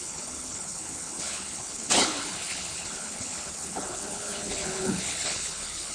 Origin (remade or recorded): remade